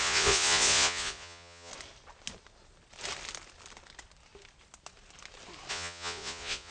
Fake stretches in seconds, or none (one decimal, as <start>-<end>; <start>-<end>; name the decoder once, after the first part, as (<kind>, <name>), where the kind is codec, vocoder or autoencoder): 0.0-1.7 (vocoder, Vocos); 5.7-6.7